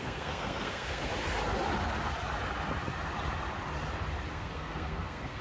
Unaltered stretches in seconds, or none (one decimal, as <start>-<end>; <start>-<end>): 1.1-4.3